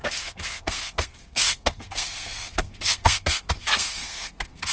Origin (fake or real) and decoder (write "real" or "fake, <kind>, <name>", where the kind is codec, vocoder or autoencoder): fake, codec, SNAC